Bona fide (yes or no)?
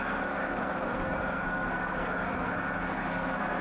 no